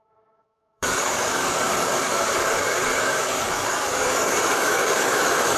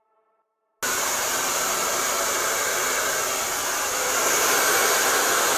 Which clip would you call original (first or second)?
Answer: second